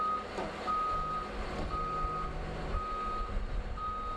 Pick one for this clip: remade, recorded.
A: recorded